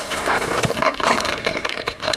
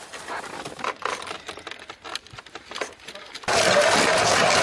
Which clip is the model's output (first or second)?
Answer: first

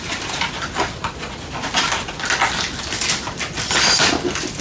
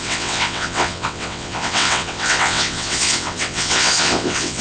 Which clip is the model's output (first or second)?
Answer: second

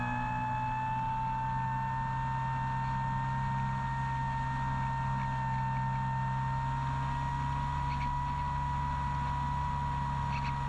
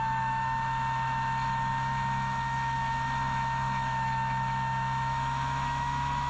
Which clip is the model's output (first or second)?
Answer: second